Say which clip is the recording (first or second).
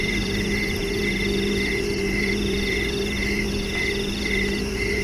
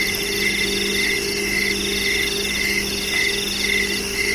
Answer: second